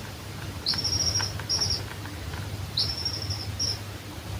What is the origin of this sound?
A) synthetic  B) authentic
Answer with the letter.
B